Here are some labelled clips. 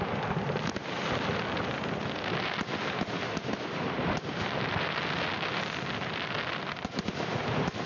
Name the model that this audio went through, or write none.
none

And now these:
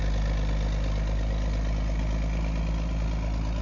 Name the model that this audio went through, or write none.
none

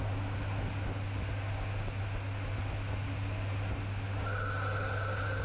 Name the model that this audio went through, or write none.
none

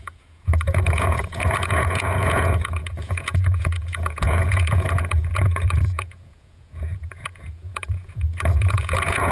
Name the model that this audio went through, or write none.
vocoder, Vocos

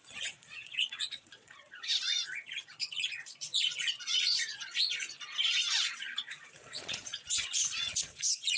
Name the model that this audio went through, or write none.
vocoder, Vocos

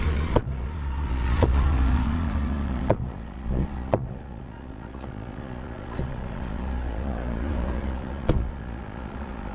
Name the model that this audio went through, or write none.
vocoder, Vocos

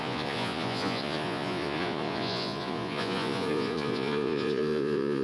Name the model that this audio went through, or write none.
vocoder, Vocos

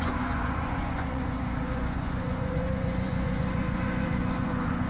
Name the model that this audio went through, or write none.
vocoder, Vocos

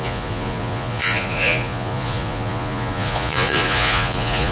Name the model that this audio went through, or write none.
vocoder, Vocos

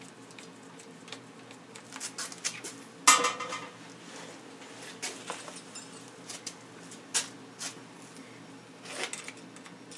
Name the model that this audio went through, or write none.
none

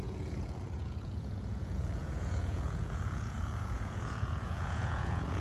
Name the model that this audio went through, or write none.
vocoder, Vocos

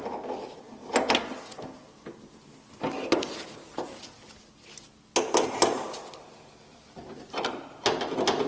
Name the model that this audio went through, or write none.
none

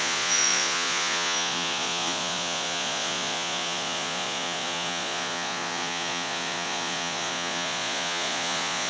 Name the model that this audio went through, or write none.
vocoder, Vocos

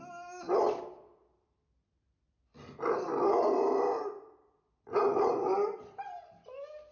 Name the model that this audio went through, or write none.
none